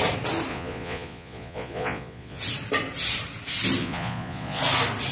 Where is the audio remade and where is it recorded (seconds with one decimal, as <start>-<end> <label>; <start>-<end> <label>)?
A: 0.0-0.5 recorded; 0.5-2.4 remade; 2.4-3.8 recorded; 3.8-4.6 remade; 4.6-5.1 recorded